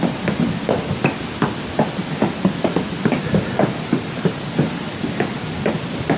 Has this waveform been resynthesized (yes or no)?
no